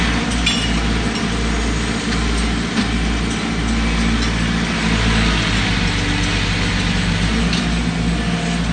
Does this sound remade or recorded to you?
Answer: recorded